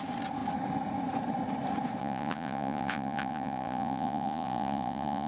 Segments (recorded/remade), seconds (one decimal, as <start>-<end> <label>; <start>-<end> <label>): 0.0-2.0 recorded; 2.0-5.3 remade